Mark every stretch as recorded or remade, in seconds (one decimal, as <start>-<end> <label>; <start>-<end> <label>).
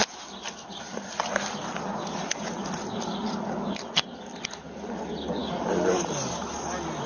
0.0-7.1 recorded